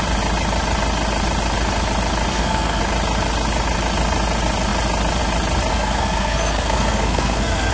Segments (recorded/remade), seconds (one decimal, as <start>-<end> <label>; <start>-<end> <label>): 0.0-2.3 recorded; 2.3-2.8 remade; 2.8-5.7 recorded; 5.7-7.7 remade